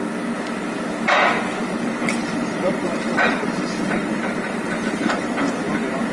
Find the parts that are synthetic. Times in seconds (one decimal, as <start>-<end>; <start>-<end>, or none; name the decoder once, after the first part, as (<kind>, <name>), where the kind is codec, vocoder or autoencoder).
1.6-5.3 (vocoder, BigVGAN v2)